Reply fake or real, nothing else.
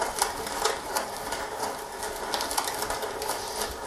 real